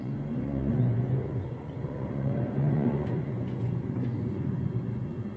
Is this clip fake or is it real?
fake